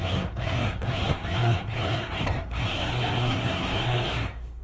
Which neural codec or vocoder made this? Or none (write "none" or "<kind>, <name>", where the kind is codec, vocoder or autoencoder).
codec, SNAC